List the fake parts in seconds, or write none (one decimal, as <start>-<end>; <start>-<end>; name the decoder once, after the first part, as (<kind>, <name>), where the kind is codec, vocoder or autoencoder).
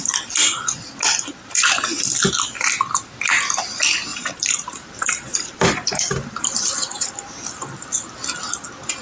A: 4.1-7.1 (vocoder, BigVGAN v2)